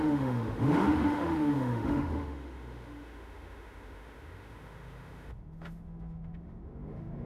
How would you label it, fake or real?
fake